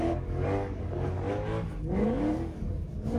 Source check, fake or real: fake